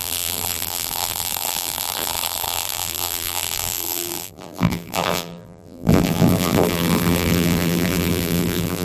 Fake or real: fake